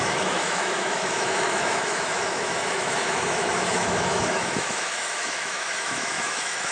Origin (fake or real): fake